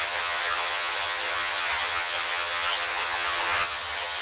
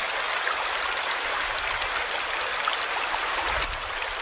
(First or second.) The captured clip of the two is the second